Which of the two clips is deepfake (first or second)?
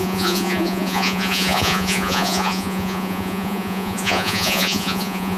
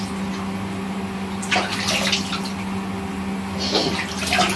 first